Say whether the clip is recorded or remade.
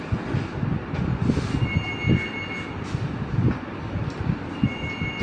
recorded